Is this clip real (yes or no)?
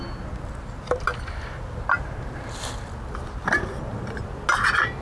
yes